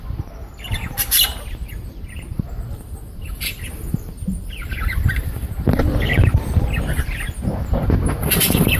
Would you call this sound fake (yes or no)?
yes